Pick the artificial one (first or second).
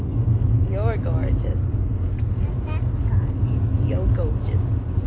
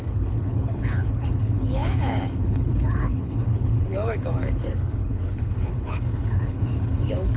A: second